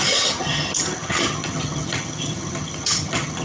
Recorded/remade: remade